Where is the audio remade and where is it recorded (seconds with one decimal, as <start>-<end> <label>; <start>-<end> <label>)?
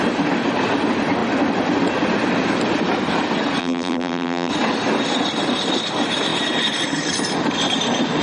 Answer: 0.0-3.6 recorded; 3.6-4.5 remade; 4.5-8.2 recorded